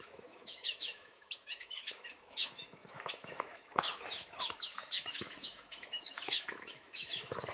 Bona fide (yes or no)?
no